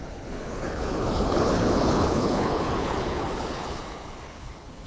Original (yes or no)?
no